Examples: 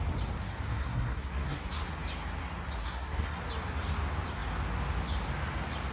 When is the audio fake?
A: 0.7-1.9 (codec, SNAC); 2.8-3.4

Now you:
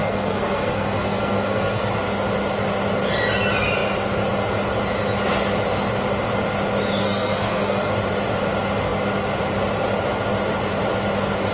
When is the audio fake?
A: 0.0-1.9 (codec, SNAC); 7.0-7.9

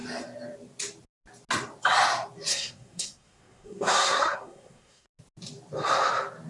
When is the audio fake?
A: 2.5-5.1 (codec, SNAC)

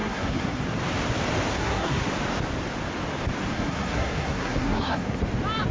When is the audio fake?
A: 0.0-0.6 (codec, SNAC); 1.5-2.1; 3.5-5.2